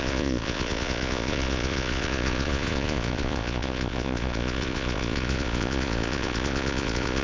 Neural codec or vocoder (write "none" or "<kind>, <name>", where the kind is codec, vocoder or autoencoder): vocoder, Vocos